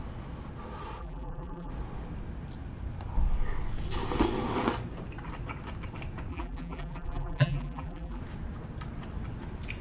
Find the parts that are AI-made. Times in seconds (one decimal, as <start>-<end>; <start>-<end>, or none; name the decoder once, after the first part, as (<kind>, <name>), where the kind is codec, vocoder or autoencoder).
1.0-1.7 (vocoder, BigVGAN v2); 6.3-8.2